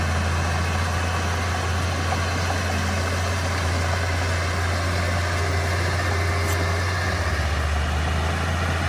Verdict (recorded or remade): recorded